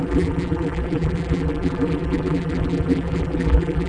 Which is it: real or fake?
fake